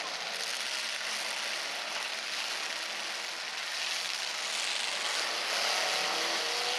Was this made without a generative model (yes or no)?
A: yes